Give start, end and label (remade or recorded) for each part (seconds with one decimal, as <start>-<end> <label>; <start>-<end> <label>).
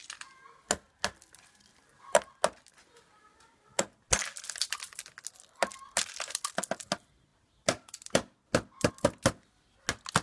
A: 0.0-1.7 recorded; 1.7-2.4 remade; 2.4-7.3 recorded; 7.3-8.9 remade; 8.9-10.2 recorded